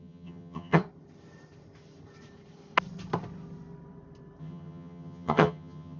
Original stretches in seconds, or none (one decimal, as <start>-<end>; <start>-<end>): 0.8-4.4